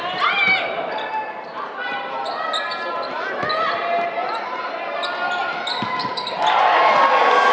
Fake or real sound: real